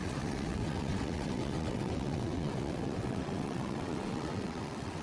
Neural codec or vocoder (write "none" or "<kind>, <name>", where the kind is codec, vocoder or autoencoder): vocoder, WaveNeXt